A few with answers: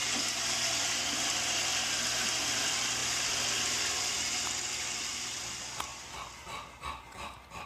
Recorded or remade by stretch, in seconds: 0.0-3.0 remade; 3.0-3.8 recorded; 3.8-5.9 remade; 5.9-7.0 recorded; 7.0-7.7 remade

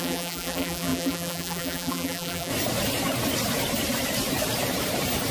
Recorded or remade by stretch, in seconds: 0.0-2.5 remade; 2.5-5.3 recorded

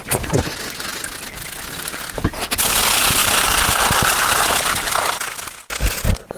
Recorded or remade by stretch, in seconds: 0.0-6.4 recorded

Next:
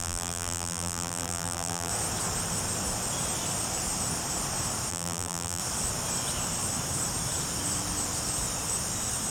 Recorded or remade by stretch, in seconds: 0.0-1.9 remade; 1.9-4.9 recorded; 4.9-5.6 remade; 5.6-9.3 recorded

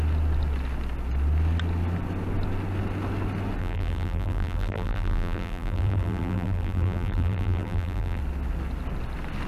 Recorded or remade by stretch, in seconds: 0.0-3.6 recorded; 3.6-8.2 remade; 8.2-9.5 recorded